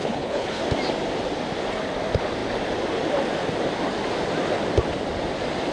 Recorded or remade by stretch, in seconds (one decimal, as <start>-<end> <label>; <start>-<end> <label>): 0.0-0.6 remade; 0.6-5.7 recorded